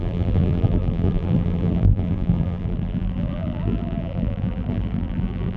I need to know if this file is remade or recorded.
remade